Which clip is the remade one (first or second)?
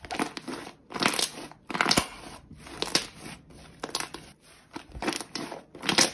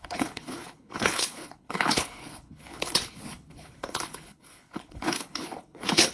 second